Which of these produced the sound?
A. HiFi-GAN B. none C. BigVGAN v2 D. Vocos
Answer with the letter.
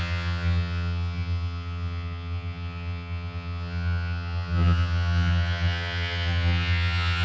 A